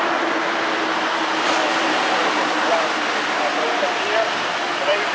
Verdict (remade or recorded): recorded